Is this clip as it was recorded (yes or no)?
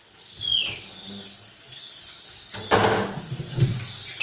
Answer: yes